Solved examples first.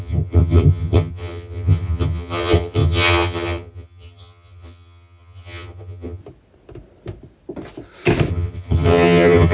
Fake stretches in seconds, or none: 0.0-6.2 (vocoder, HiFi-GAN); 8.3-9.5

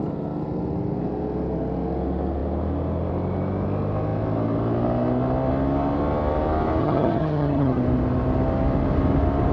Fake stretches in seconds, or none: 6.8-7.8 (vocoder, HiFi-GAN)

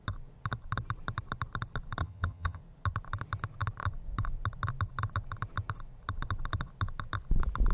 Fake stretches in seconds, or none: 2.0-2.6 (vocoder, HiFi-GAN)

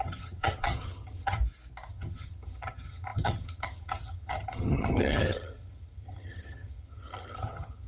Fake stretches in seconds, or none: 0.0-1.4 (vocoder, HiFi-GAN); 1.9-7.9

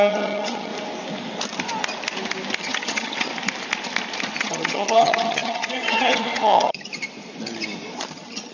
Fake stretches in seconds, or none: 0.0-0.7 (vocoder, HiFi-GAN); 2.6-3.3; 4.4-6.9; 8.1-8.5

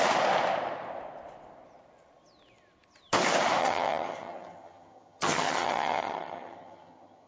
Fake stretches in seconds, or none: 3.6-7.3 (vocoder, HiFi-GAN)